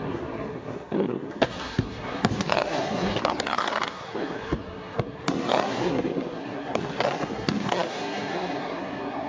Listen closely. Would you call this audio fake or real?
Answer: fake